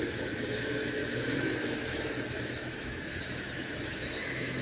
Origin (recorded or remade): remade